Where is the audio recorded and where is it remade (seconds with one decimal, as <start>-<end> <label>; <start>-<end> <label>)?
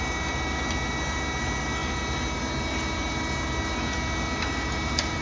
0.0-5.2 recorded